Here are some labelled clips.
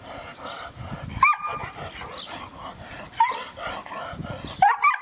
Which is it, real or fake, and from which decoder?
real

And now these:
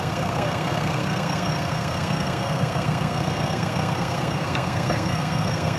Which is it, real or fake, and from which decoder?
fake, codec, SNAC